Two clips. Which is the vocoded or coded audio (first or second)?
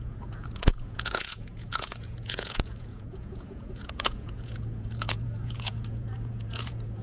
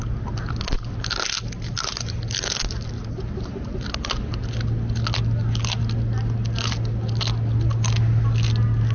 first